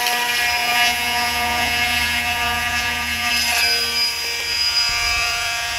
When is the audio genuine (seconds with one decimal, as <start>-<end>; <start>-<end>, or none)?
0.0-0.6; 3.3-4.5